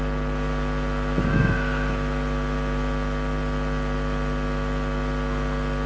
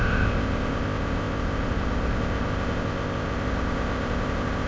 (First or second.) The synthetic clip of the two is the second